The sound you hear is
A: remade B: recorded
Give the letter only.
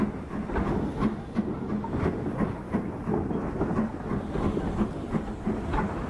B